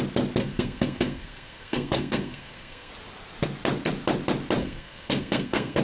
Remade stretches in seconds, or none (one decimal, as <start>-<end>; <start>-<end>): 0.4-2.9; 4.6-5.8